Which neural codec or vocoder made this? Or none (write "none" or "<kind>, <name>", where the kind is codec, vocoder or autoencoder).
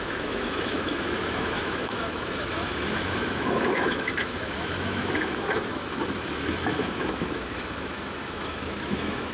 autoencoder, DAC-VAE